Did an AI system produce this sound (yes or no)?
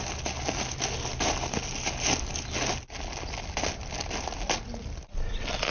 no